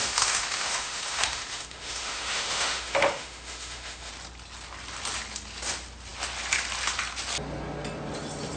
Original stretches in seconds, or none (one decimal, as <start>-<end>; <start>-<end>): 4.1-8.6